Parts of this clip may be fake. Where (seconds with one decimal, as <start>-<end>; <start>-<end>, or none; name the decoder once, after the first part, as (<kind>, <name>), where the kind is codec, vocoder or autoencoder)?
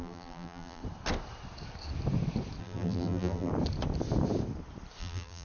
0.0-0.8 (vocoder, BigVGAN v2); 2.6-3.5; 5.0-5.4